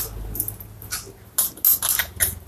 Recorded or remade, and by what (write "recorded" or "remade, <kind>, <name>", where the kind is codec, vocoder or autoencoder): recorded